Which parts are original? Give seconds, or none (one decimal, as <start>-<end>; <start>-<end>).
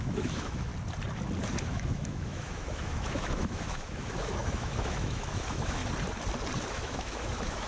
0.7-1.6; 5.8-6.7